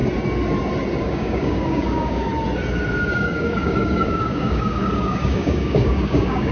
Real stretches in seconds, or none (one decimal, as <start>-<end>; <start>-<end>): 0.0-1.0; 2.3-3.0